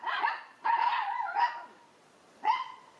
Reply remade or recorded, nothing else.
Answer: remade